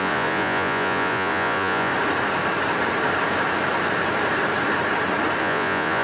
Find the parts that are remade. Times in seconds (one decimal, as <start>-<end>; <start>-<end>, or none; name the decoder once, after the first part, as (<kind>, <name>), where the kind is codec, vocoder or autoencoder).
0.0-1.9 (vocoder, Vocos); 5.4-6.0